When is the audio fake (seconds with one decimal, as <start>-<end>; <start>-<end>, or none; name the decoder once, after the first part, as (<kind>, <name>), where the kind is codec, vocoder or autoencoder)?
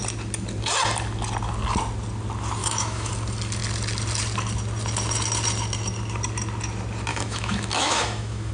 2.6-3.1 (autoencoder, DAC-VAE); 7.1-8.5